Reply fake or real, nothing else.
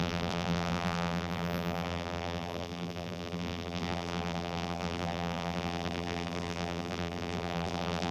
fake